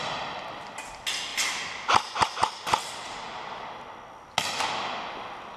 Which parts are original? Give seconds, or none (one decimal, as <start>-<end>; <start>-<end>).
0.0-5.6